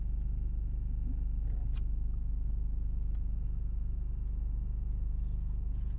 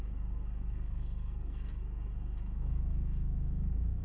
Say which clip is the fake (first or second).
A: second